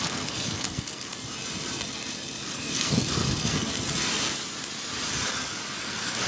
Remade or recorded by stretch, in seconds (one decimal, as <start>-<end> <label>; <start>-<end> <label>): 0.0-1.1 remade; 1.1-2.5 recorded; 2.5-3.7 remade; 3.7-5.8 recorded; 5.8-6.3 remade